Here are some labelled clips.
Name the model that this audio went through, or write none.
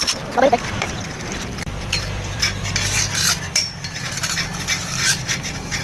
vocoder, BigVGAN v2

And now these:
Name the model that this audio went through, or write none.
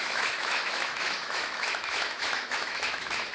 autoencoder, DAC-VAE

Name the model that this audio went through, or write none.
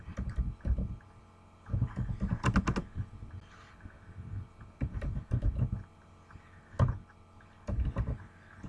none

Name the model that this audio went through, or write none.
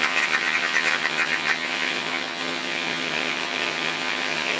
vocoder, HiFi-GAN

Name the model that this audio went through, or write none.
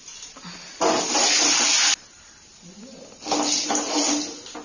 none